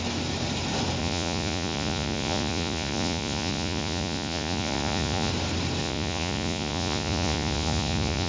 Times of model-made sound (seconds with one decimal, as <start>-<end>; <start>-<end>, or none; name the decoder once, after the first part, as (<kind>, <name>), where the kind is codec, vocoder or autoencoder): 1.0-5.3 (vocoder, Vocos); 5.8-8.3